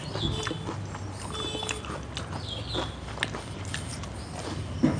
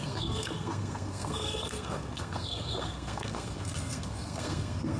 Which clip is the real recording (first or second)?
first